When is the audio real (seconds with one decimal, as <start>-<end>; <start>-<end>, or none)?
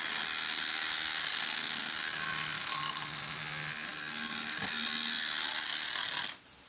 0.0-6.7